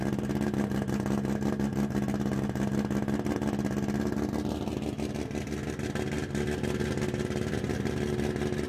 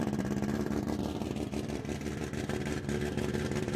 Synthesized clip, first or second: second